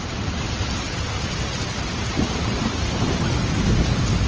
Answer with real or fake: real